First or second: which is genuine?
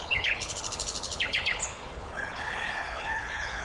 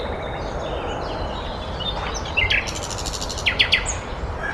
second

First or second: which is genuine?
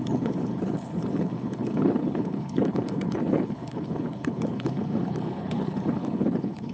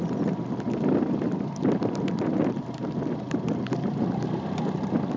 second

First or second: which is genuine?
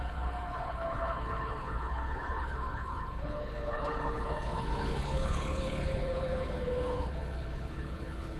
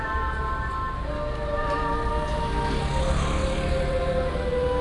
second